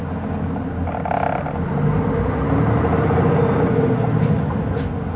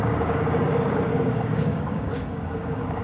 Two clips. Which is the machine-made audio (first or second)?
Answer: second